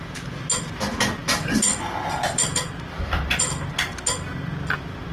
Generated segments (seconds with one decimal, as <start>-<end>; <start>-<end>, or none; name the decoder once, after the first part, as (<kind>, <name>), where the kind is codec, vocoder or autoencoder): none

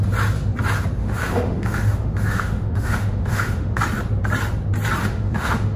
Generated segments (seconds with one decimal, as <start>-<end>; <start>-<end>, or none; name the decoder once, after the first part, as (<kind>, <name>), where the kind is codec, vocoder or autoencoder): 1.0-3.8 (autoencoder, DAC-VAE); 5.0-5.8